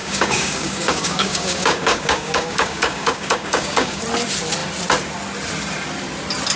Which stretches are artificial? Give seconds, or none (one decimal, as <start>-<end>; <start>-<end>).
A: 0.0-4.0